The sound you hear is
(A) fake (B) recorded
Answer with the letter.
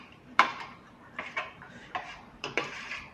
A